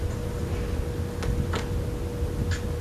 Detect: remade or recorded recorded